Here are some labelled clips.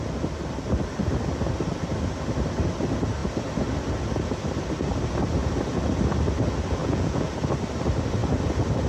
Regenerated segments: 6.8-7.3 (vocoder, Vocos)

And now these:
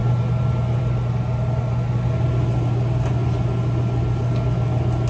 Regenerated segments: none